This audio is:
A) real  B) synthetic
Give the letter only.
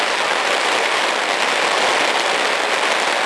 A